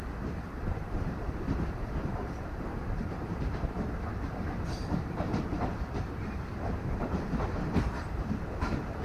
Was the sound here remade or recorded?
remade